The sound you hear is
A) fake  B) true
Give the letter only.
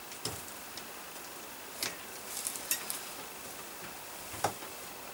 B